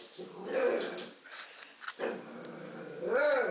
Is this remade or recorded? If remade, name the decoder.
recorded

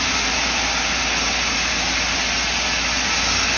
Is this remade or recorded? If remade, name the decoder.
recorded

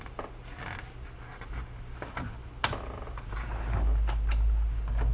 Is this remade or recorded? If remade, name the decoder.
recorded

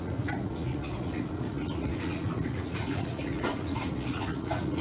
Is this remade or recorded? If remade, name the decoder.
remade, vocoder, Vocos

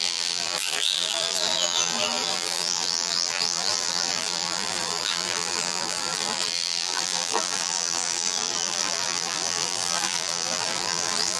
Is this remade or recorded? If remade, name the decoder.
remade, vocoder, BigVGAN v2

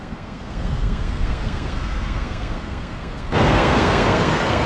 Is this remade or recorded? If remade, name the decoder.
remade, codec, SNAC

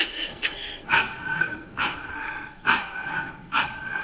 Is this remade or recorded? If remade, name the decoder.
remade, codec, SNAC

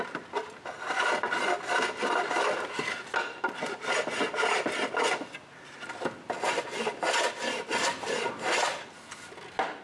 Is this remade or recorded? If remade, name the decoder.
recorded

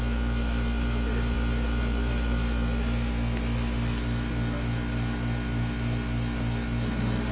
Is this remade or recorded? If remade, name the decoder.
recorded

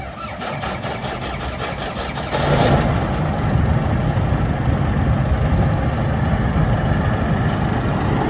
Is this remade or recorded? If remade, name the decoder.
recorded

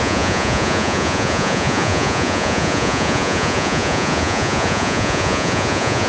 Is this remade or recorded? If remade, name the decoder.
remade, vocoder, Vocos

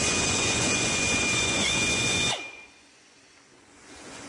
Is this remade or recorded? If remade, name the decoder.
remade, vocoder, Vocos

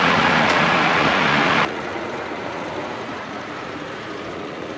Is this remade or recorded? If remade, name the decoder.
remade, vocoder, Vocos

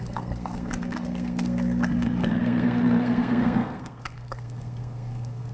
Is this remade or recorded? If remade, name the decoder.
remade, codec, SNAC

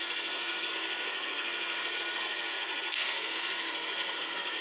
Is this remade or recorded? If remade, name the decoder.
remade, codec, SNAC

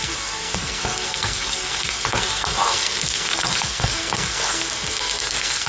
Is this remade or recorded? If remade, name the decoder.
remade, codec, SNAC